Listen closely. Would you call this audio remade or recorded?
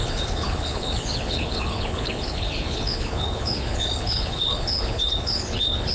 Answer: remade